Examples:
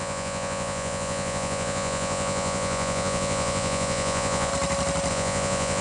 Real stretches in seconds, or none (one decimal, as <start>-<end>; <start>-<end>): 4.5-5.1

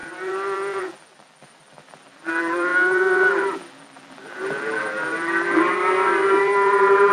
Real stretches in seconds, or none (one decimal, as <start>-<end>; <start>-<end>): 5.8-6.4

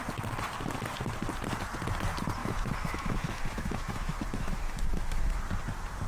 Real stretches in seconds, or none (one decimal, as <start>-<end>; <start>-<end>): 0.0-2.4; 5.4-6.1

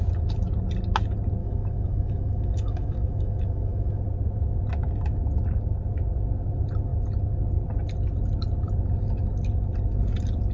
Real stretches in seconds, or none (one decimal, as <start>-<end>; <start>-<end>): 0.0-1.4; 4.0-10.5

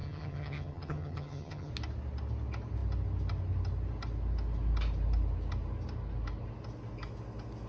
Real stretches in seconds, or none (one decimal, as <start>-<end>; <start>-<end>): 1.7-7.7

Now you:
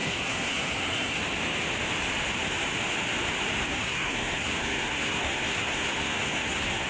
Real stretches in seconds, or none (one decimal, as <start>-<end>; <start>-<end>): 1.2-3.7

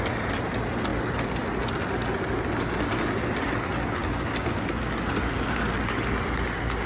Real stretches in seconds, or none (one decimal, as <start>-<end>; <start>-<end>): 0.0-6.9

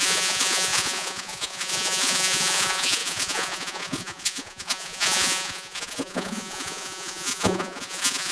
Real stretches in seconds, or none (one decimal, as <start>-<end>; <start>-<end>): none